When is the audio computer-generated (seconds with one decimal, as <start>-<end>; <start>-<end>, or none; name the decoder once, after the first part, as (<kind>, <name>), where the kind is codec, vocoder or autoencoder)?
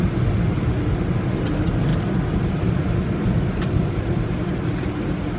none